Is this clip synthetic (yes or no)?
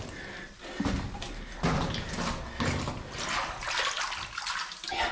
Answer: no